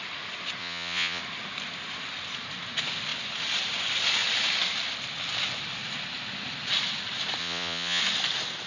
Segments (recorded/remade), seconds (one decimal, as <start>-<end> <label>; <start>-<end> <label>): 0.0-0.6 recorded; 0.6-1.2 remade; 1.2-7.4 recorded; 7.4-8.0 remade; 8.0-8.7 recorded